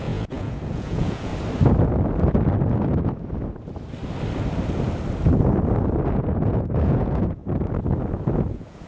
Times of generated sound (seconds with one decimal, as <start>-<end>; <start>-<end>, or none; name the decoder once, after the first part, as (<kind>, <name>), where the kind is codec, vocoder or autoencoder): 0.0-1.3 (vocoder, Vocos); 6.1-7.4; 8.5-8.9

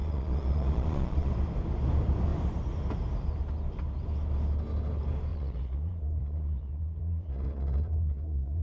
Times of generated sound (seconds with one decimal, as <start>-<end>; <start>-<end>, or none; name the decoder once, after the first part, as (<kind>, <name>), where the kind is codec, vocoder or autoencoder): 0.0-1.3 (vocoder, Vocos); 5.3-8.6

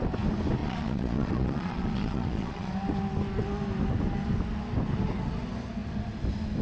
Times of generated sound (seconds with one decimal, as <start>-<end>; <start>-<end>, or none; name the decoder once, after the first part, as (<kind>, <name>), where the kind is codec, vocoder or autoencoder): 0.6-2.7 (vocoder, Vocos)

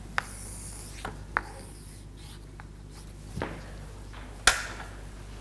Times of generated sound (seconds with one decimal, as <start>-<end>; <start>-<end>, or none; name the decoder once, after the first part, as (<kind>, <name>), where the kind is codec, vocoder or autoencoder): none

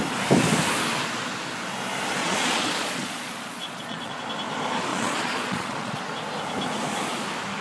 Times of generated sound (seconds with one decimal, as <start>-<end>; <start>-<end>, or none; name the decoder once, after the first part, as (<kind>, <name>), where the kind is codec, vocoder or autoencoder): 2.2-4.2 (vocoder, Vocos); 4.9-6.0

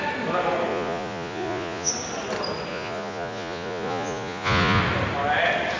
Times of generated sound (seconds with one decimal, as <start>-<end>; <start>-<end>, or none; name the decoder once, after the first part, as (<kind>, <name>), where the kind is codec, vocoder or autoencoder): 0.7-1.9 (vocoder, Vocos); 2.7-4.8

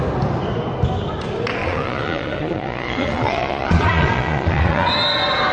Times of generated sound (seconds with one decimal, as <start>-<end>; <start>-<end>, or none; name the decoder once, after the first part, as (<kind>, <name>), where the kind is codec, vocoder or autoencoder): 1.6-4.9 (vocoder, Vocos)

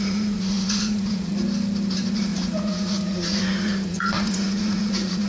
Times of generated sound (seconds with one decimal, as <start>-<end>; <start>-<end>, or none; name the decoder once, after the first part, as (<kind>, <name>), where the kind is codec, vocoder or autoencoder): 0.0-1.3 (vocoder, Vocos); 1.9-5.3